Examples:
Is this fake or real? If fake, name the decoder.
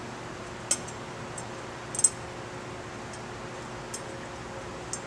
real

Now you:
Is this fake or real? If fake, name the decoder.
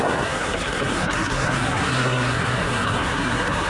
fake, codec, SNAC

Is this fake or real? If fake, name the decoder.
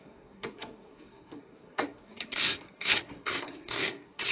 fake, codec, SNAC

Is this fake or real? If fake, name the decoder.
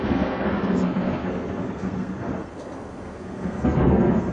fake, codec, SNAC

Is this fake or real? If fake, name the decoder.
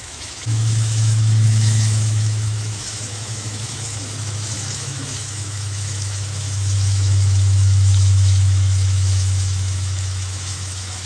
fake, autoencoder, DAC-VAE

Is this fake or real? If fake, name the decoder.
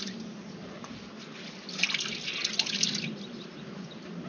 real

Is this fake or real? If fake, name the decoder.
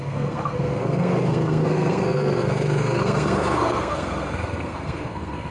fake, codec, SNAC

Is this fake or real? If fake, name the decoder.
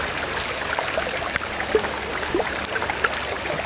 fake, vocoder, BigVGAN v2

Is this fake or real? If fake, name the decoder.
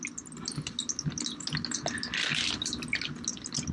real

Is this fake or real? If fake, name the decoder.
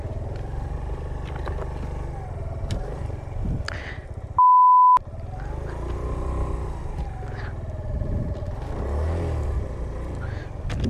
real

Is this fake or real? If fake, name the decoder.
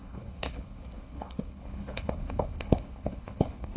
fake, codec, HILCodec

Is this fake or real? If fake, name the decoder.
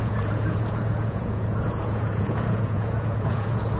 fake, vocoder, Vocos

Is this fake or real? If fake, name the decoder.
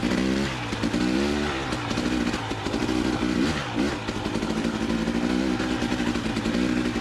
real